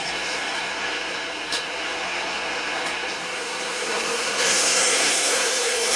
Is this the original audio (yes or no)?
no